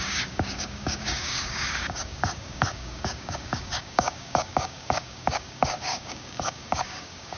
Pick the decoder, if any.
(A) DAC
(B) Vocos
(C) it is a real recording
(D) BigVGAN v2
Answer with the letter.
A